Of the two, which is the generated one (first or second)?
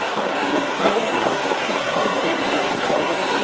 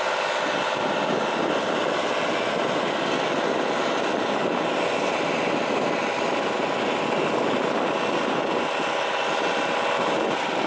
first